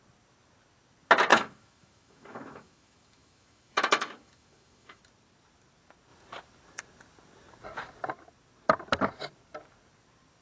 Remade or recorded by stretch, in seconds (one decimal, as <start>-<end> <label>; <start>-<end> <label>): 0.0-1.3 recorded; 1.3-5.0 remade; 5.0-10.4 recorded